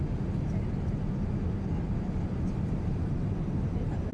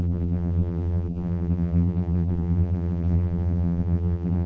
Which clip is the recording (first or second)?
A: first